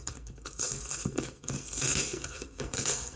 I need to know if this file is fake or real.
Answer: fake